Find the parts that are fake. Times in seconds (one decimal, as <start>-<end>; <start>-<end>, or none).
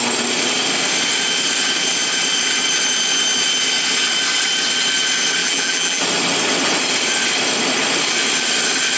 5.4-6.0